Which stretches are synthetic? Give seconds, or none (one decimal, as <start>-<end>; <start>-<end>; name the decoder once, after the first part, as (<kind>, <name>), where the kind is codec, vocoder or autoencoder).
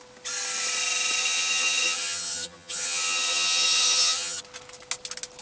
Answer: 1.2-4.4 (vocoder, HiFi-GAN)